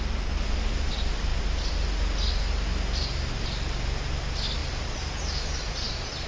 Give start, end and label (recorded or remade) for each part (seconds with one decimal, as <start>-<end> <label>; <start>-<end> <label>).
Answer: 0.0-4.6 recorded; 4.6-6.3 remade